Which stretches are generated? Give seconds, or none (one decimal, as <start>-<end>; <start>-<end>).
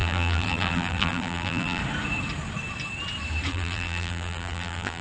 0.0-1.8; 3.5-5.0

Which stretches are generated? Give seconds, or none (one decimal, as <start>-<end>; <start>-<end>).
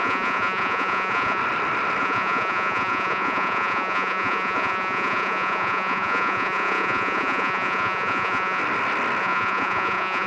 0.0-1.4; 2.0-8.6; 9.2-10.3